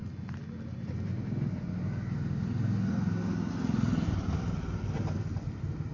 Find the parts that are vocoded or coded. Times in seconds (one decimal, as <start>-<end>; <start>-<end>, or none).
none